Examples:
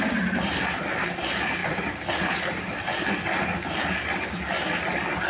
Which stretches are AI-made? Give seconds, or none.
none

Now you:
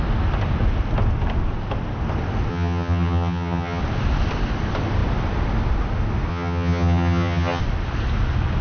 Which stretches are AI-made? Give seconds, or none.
2.5-3.8; 6.3-7.6

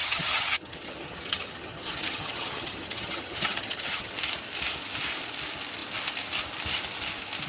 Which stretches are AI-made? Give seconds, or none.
0.0-4.1

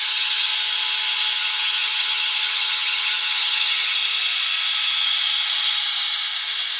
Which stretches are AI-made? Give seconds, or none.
0.0-0.5; 1.3-4.0